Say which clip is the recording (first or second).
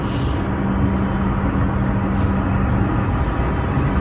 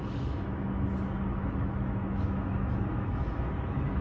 first